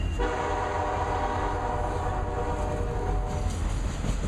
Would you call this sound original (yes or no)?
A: yes